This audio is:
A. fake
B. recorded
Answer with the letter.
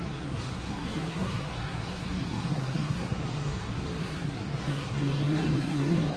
A